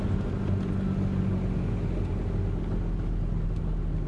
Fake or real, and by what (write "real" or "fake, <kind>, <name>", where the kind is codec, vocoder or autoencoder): real